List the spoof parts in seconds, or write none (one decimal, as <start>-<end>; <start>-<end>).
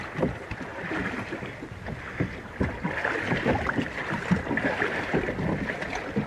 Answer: none